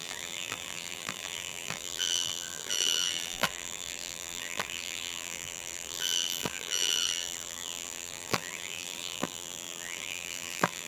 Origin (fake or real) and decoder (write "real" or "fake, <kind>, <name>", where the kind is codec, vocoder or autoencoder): fake, vocoder, BigVGAN v2